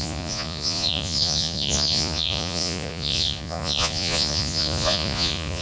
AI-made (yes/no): yes